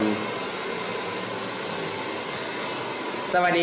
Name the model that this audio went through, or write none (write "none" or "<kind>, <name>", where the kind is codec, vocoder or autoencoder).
none